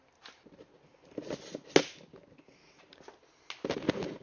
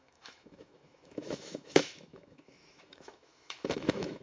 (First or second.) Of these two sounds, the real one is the first